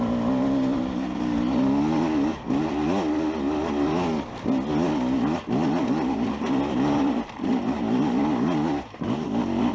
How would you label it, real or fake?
real